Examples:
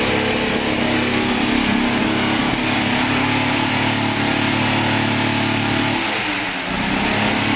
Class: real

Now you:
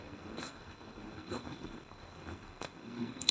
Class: fake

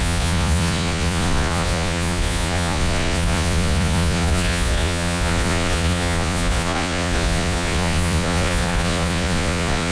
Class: fake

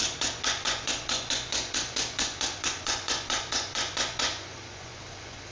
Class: fake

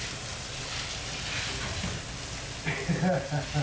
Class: real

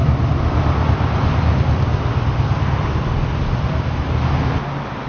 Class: real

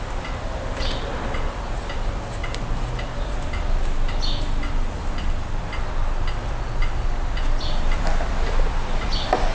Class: real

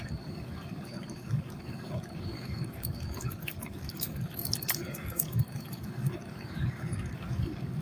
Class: fake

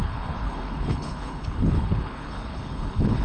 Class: fake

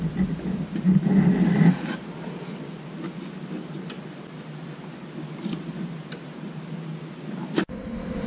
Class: real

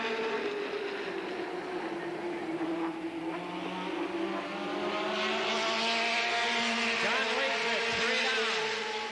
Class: real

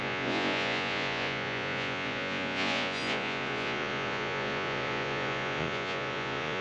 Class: fake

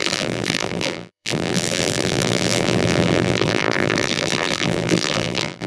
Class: fake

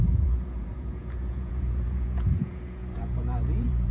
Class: fake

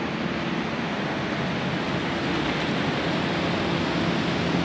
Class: real